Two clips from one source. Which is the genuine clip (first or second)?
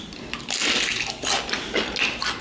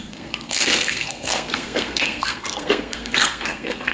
first